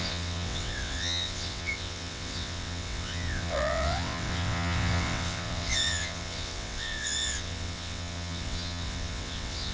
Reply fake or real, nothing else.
fake